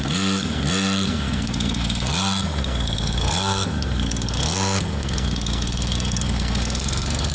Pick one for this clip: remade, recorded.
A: remade